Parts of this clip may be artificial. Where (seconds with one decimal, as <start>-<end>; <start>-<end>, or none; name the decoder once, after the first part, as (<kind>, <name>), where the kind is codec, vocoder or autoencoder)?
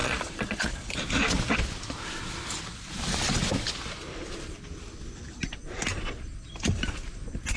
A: 0.0-0.9 (vocoder, Vocos)